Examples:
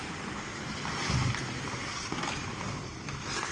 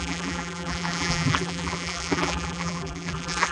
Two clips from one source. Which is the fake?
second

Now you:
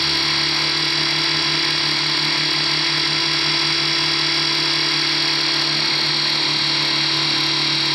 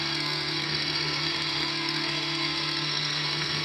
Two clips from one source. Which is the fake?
second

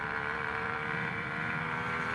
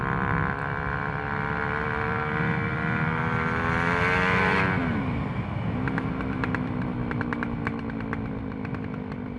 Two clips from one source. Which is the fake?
first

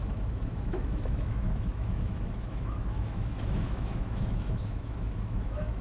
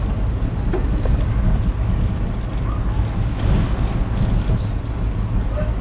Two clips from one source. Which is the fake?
first